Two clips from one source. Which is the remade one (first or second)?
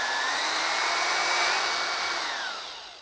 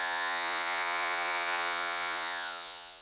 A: second